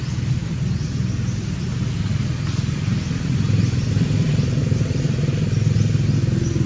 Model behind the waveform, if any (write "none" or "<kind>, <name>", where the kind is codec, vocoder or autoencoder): none